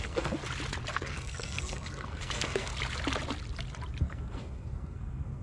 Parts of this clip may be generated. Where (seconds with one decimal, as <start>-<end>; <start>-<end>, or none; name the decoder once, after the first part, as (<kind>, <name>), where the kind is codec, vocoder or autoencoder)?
0.0-0.4 (codec, SNAC); 0.9-2.7; 4.0-5.4